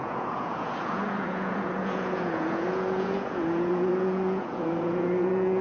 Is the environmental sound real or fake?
fake